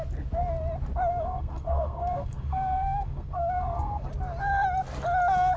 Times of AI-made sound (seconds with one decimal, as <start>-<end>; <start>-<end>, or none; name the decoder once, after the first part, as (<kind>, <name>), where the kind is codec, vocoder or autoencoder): 1.1-4.1 (codec, SNAC)